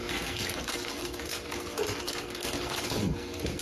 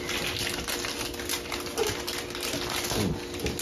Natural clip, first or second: second